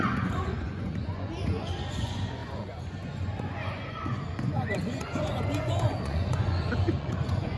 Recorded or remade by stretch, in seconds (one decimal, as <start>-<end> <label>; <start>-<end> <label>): 0.0-7.6 remade